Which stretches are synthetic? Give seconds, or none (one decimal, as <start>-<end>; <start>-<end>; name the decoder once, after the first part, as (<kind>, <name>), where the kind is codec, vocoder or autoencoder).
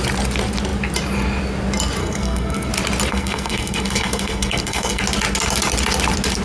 2.0-2.7 (codec, SNAC); 3.1-5.0